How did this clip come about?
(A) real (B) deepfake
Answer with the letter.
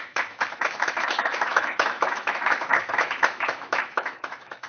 B